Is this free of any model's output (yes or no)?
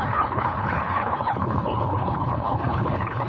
no